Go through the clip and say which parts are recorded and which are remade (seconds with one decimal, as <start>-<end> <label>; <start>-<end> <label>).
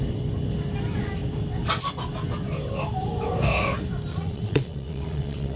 0.0-4.1 recorded; 4.1-5.6 remade